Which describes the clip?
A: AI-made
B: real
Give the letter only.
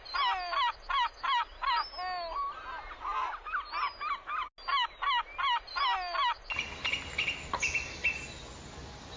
B